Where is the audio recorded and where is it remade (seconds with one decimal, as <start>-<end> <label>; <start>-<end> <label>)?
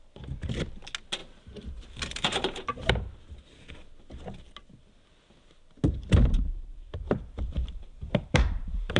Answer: 0.0-1.2 recorded; 1.2-2.9 remade; 2.9-7.0 recorded; 7.0-9.0 remade